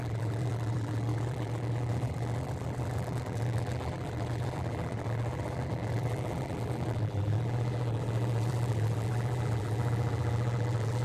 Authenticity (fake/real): fake